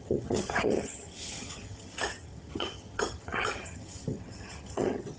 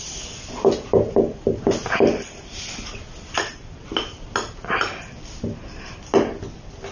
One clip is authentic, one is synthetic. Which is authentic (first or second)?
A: second